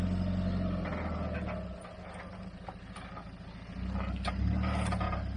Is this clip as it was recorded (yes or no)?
yes